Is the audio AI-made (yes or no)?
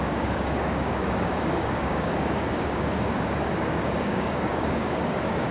yes